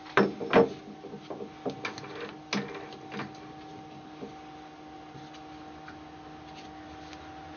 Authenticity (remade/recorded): recorded